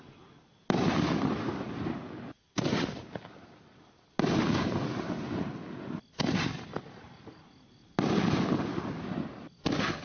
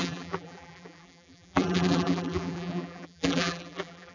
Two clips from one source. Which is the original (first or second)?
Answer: first